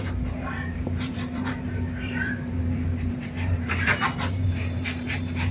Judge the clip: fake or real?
fake